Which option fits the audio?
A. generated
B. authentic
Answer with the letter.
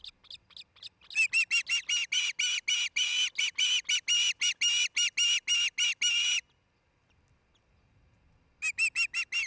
B